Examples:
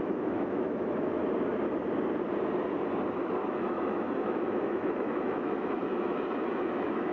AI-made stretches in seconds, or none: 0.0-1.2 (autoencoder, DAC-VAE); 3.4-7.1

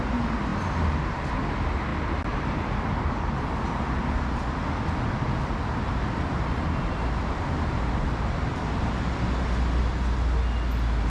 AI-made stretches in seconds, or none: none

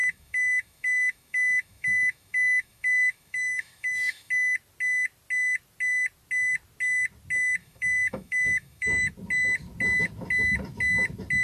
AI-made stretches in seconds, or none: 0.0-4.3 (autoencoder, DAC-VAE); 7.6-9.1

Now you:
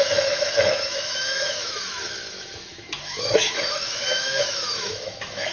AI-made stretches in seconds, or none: 0.0-5.5 (autoencoder, DAC-VAE)

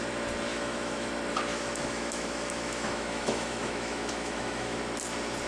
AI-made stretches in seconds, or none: 0.5-1.1 (autoencoder, DAC-VAE); 1.5-4.8